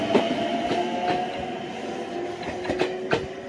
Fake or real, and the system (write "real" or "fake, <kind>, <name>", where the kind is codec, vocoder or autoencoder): real